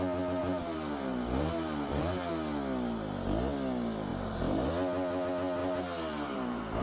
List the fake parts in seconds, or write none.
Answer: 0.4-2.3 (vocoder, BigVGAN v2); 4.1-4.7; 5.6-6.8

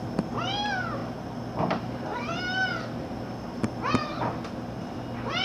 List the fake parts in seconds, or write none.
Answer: 1.0-4.2 (vocoder, BigVGAN v2)

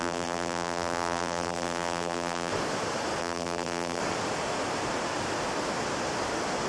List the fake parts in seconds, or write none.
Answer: 0.0-2.5 (vocoder, BigVGAN v2); 3.2-4.0

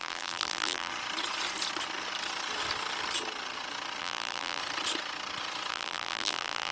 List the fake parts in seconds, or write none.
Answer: 0.0-0.9 (vocoder, BigVGAN v2); 4.0-4.6; 5.7-6.7